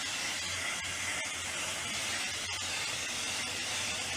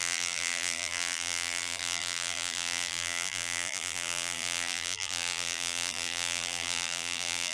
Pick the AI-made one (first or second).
second